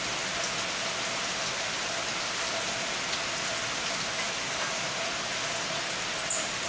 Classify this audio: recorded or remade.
recorded